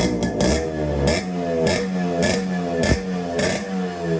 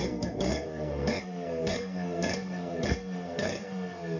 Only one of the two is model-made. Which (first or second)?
second